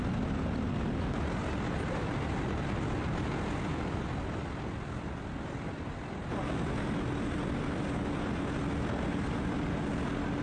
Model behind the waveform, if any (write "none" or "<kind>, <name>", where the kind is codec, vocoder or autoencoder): none